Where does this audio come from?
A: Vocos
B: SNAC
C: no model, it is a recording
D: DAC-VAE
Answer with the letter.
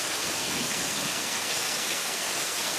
B